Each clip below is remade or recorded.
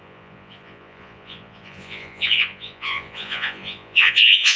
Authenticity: remade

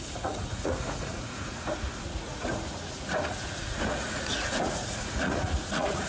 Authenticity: remade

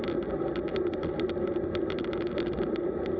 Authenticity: recorded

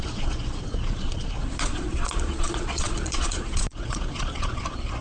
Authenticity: remade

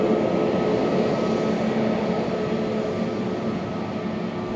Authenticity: recorded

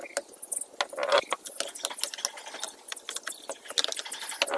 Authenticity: recorded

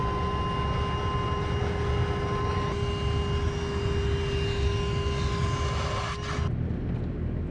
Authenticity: recorded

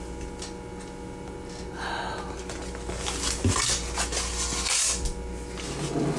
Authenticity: recorded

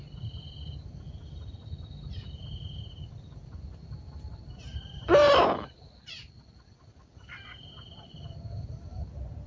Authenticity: recorded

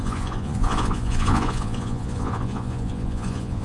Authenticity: remade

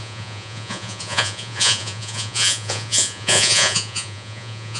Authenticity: remade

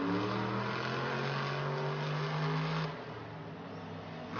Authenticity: recorded